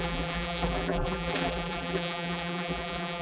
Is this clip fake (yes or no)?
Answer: yes